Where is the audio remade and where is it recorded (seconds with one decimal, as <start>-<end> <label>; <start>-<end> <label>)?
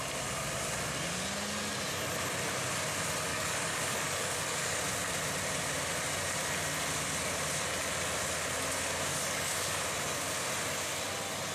0.0-3.3 recorded; 3.3-4.8 remade; 4.8-9.1 recorded; 9.1-9.8 remade; 9.8-11.5 recorded